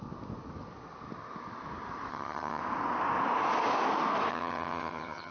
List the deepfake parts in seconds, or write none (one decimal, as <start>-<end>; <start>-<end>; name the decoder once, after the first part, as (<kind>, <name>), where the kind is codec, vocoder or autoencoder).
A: 2.1-2.6 (vocoder, HiFi-GAN); 4.3-5.3